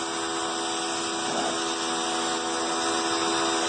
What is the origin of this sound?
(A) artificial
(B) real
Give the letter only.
B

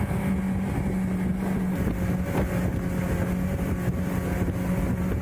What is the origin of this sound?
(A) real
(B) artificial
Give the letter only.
A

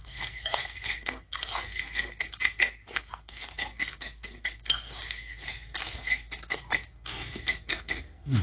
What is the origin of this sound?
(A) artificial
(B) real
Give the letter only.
A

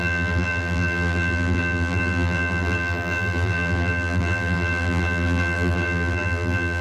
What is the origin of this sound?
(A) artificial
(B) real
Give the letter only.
A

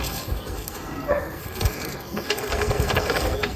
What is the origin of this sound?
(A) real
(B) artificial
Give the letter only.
B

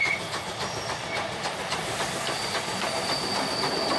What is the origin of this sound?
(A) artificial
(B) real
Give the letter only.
B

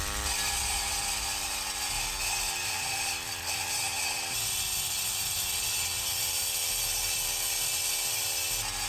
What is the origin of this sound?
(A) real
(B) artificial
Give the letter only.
A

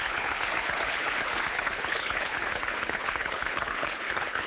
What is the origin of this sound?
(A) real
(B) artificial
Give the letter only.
B